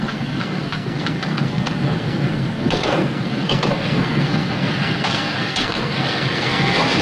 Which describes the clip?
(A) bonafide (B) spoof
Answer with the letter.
B